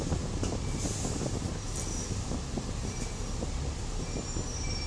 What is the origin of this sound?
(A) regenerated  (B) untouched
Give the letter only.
B